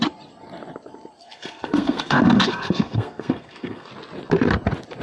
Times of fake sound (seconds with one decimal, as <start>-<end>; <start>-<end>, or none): 1.2-3.9